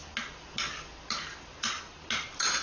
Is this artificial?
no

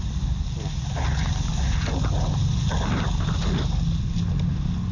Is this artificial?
no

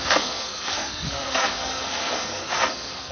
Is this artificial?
yes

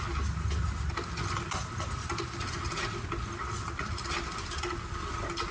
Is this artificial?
no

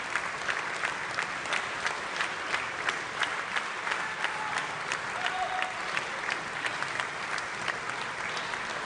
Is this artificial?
no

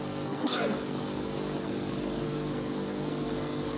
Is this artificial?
yes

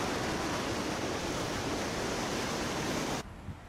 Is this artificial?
no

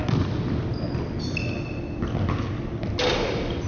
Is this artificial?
no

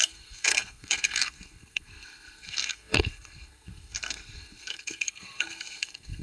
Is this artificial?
yes